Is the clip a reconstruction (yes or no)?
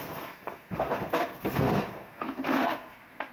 yes